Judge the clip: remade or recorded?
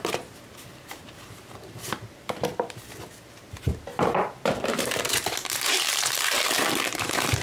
remade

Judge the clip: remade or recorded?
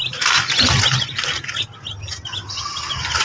recorded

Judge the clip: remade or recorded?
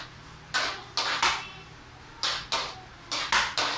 recorded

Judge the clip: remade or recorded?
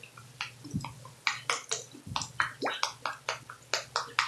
recorded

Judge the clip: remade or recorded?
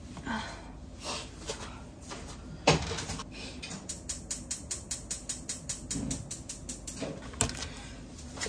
recorded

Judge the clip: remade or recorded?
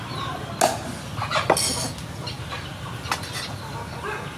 recorded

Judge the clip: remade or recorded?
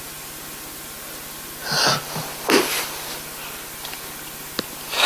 recorded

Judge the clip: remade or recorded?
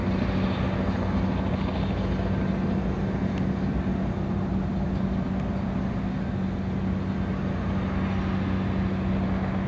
recorded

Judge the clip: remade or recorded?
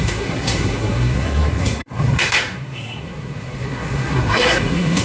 remade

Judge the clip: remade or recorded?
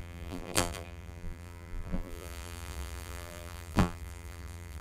remade